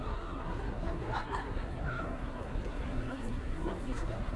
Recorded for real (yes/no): no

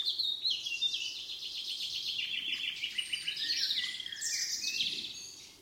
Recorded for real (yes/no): yes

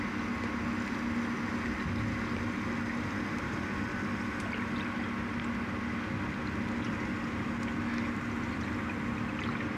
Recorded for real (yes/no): yes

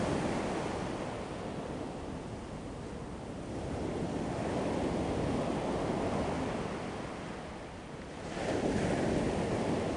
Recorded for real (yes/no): yes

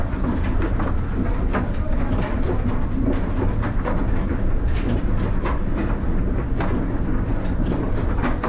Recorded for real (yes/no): yes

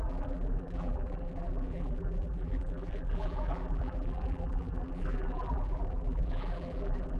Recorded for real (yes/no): no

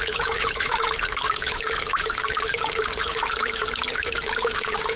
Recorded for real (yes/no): no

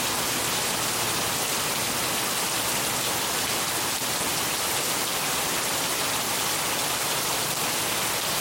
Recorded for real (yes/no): yes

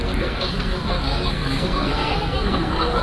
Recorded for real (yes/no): no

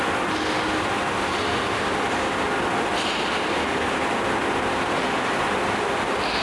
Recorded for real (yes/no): yes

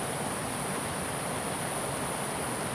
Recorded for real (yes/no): yes